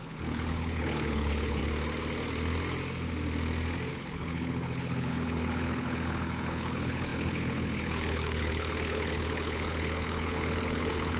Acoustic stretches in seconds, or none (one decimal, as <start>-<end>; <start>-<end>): 1.6-3.9